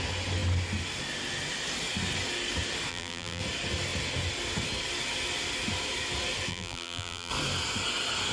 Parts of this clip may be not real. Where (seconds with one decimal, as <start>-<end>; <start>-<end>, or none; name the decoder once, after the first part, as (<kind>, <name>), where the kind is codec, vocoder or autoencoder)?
2.9-3.4 (vocoder, BigVGAN v2); 6.5-7.3